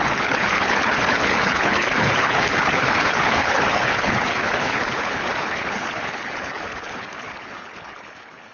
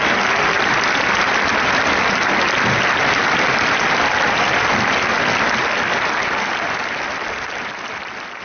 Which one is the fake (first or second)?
first